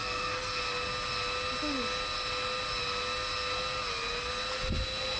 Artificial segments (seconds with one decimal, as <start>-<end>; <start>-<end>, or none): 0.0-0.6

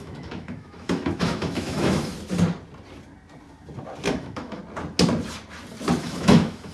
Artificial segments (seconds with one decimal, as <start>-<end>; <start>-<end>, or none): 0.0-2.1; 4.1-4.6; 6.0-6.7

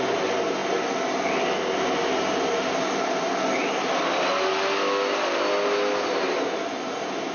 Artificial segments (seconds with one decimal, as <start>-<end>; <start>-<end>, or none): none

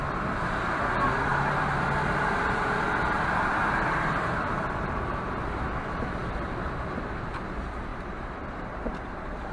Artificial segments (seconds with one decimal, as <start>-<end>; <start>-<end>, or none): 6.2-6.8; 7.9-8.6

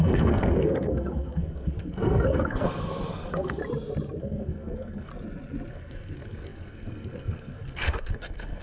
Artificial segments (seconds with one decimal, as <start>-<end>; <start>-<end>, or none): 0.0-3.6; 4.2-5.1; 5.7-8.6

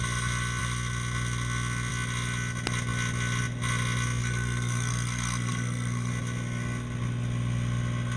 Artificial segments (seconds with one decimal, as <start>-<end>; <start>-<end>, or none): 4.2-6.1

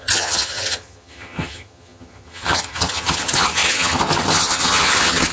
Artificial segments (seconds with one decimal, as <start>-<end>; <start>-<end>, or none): 0.0-5.3

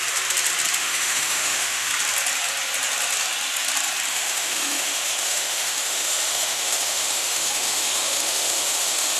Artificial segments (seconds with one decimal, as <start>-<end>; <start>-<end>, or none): 0.8-1.9; 4.1-9.2